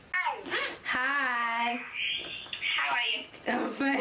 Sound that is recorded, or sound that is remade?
recorded